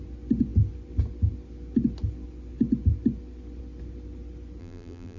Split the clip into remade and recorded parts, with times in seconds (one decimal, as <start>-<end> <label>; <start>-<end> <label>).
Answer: 0.0-4.6 recorded; 4.6-5.2 remade